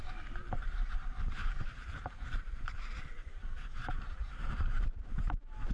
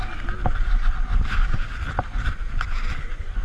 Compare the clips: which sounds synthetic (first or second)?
first